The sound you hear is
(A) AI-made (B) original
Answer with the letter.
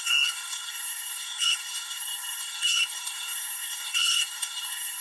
A